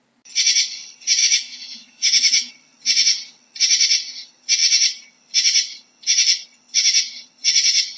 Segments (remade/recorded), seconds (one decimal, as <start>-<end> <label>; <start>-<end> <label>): 0.0-1.2 recorded; 1.2-2.5 remade; 2.5-8.0 recorded